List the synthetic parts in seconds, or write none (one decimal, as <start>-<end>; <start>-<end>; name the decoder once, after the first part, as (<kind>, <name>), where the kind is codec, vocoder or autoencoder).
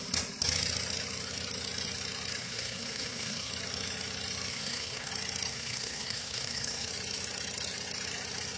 2.4-3.5 (codec, SNAC); 4.5-5.1; 5.5-6.9